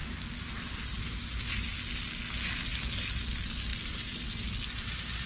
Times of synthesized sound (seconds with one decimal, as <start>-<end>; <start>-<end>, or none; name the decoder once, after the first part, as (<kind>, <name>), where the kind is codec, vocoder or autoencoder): none